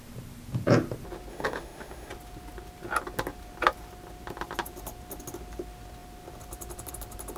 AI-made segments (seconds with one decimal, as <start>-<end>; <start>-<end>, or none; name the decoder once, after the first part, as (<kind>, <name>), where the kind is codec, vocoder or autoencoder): 1.3-2.1 (autoencoder, DAC-VAE)